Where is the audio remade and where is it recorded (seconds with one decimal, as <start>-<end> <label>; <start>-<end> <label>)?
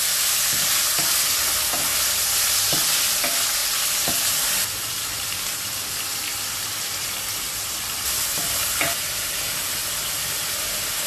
0.0-1.9 remade; 1.9-2.9 recorded; 2.9-3.6 remade; 3.6-4.5 recorded; 4.5-9.8 remade; 9.8-11.1 recorded